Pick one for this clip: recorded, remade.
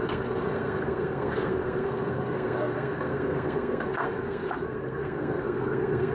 remade